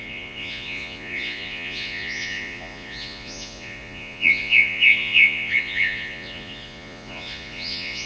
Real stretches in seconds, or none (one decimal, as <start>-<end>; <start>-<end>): none